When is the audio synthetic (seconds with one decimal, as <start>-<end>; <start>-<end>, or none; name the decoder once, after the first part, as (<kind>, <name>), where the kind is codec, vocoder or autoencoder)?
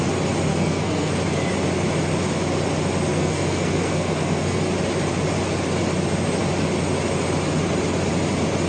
0.5-1.1 (codec, SNAC); 3.1-4.6